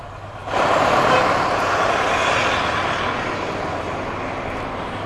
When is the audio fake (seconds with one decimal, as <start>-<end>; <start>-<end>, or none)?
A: none